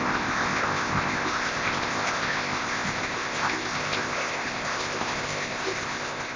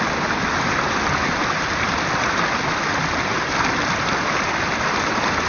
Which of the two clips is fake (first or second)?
first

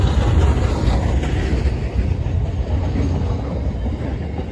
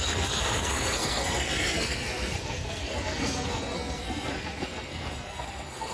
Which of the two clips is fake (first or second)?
second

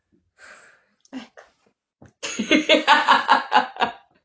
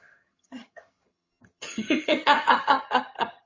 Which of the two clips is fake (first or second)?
second